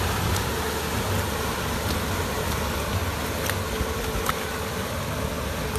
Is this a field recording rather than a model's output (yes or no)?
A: yes